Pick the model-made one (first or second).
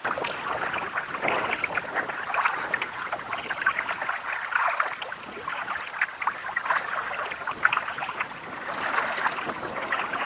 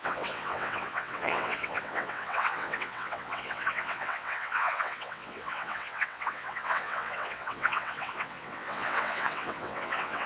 second